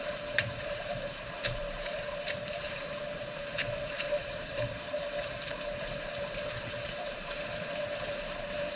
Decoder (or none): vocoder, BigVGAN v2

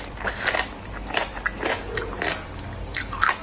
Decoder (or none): none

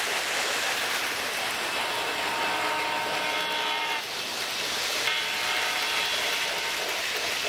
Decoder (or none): none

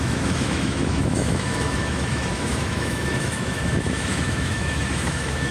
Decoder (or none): autoencoder, DAC-VAE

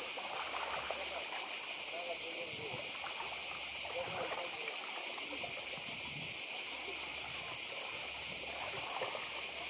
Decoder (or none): none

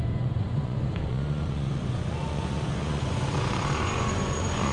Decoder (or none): vocoder, Vocos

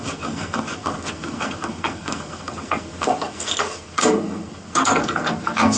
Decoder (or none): codec, SNAC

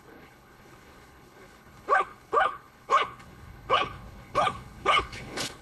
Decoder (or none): codec, HILCodec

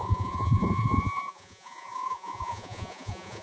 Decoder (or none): vocoder, Vocos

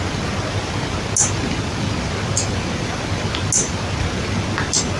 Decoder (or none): none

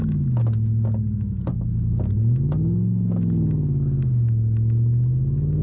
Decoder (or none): none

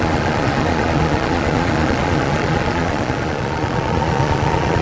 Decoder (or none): vocoder, Vocos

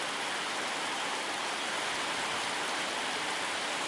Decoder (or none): none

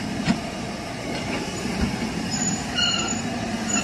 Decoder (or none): vocoder, BigVGAN v2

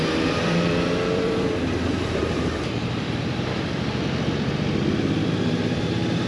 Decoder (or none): vocoder, BigVGAN v2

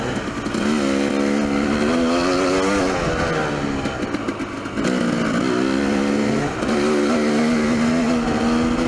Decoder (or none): none